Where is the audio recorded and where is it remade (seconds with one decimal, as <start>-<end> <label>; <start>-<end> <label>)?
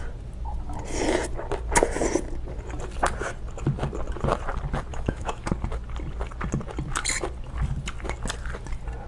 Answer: 0.0-4.9 recorded; 4.9-5.5 remade; 5.5-9.1 recorded